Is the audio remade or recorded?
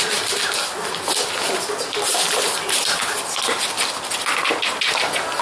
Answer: recorded